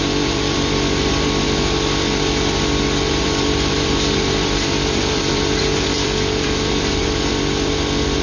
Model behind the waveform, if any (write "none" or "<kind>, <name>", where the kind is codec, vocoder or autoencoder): vocoder, BigVGAN v2